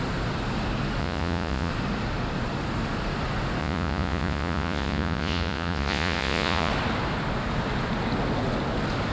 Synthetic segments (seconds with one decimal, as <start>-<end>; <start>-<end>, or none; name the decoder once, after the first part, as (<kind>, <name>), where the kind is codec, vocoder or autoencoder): 1.0-1.7 (vocoder, Vocos); 3.6-6.7